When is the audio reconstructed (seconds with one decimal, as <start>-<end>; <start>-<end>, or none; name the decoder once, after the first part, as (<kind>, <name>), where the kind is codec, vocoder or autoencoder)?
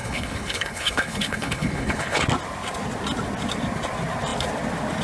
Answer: 0.0-2.2 (codec, HILCodec)